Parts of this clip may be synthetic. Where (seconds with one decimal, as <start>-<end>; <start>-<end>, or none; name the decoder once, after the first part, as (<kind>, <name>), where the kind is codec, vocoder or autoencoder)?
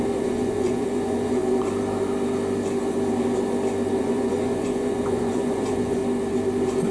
0.0-1.4 (vocoder, Vocos); 4.0-6.0